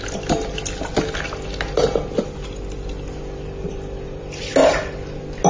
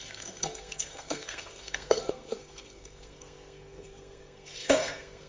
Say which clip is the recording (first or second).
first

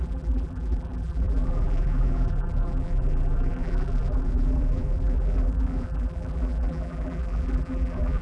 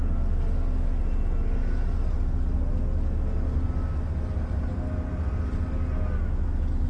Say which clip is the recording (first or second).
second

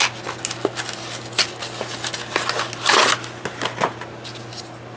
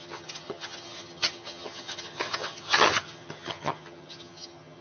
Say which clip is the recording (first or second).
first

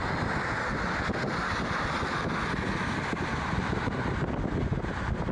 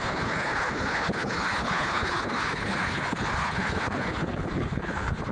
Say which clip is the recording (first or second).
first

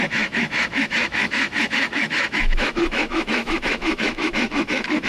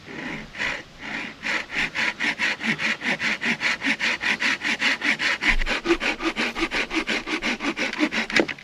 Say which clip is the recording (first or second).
second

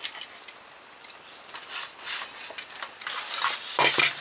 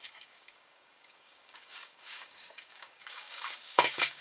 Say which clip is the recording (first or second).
first